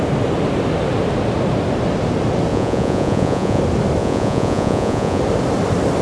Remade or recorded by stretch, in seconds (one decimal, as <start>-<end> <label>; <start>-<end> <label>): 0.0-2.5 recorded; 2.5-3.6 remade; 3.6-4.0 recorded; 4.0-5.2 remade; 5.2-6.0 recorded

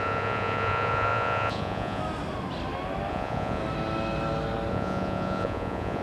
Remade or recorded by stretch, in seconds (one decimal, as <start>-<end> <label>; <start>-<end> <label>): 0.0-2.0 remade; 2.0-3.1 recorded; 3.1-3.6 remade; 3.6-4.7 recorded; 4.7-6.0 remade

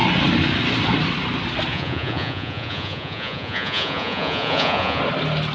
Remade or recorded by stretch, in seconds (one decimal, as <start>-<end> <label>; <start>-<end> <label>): 0.0-1.7 recorded; 1.7-5.0 remade; 5.0-5.5 recorded

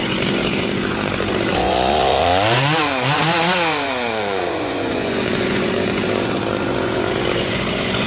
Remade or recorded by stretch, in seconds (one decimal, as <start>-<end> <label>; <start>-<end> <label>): 0.0-8.1 remade

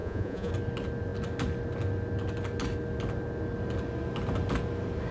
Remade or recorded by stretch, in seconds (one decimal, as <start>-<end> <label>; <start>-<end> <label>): 0.0-0.5 remade; 0.5-5.1 recorded

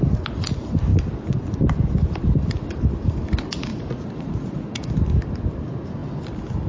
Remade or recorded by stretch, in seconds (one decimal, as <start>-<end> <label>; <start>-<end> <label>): 0.0-3.7 recorded; 3.7-4.9 remade; 4.9-6.7 recorded

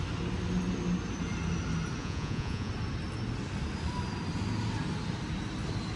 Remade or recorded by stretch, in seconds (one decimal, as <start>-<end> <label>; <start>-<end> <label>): 0.0-2.0 recorded; 2.0-2.7 remade; 2.7-6.0 recorded

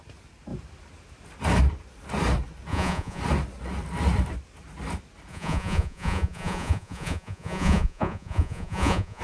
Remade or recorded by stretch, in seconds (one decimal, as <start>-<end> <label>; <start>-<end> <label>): 0.0-2.7 recorded; 2.7-3.2 remade; 3.2-5.3 recorded; 5.3-9.2 remade